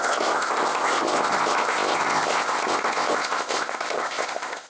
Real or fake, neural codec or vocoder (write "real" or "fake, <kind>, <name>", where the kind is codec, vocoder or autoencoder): fake, codec, ZipCodec